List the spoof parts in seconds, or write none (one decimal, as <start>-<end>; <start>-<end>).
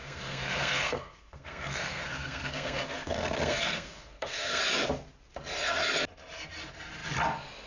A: 0.0-4.6